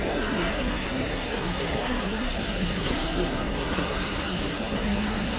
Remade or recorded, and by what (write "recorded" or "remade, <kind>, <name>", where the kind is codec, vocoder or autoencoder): remade, codec, SNAC